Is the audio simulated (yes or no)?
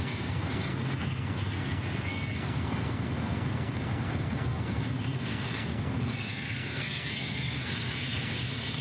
yes